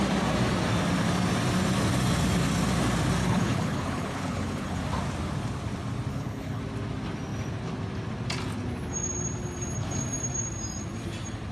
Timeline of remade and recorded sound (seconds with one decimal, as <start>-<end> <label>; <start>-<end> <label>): 0.0-3.2 recorded; 3.2-4.8 remade; 4.8-6.1 recorded; 6.1-6.6 remade; 6.6-11.5 recorded